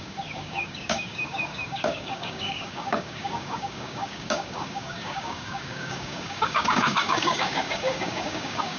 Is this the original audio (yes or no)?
no